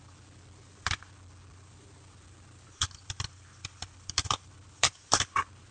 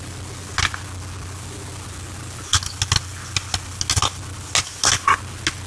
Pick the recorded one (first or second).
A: second